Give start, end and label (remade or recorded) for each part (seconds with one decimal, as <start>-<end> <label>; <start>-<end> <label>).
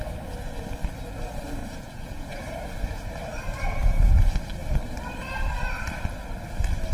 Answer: 0.0-1.6 recorded; 1.6-2.4 remade; 2.4-3.8 recorded; 3.8-4.5 remade; 4.5-6.9 recorded